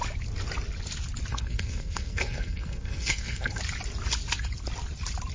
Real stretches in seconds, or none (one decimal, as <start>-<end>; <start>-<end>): 0.0-1.3; 3.6-5.3